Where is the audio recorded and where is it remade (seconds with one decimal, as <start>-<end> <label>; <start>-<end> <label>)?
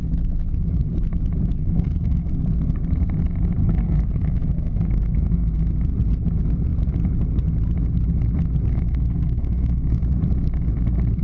0.0-1.6 recorded; 1.6-2.3 remade; 2.3-3.6 recorded; 3.6-5.6 remade; 5.6-8.7 recorded; 8.7-10.0 remade; 10.0-11.2 recorded